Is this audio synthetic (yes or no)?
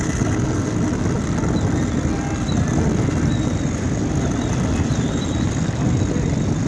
no